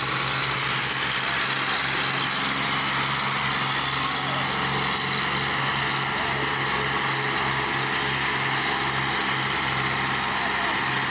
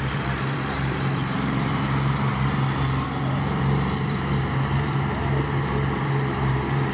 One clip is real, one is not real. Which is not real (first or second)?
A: second